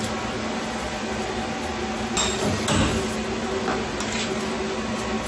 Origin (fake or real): real